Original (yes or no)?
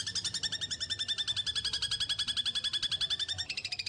yes